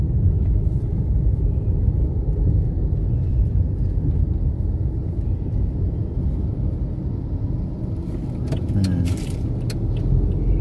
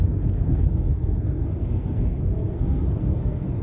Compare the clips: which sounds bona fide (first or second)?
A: first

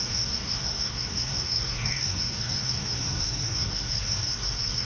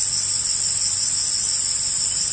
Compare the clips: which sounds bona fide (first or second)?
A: second